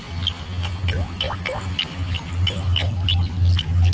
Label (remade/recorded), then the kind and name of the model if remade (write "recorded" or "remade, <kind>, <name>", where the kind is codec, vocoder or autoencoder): recorded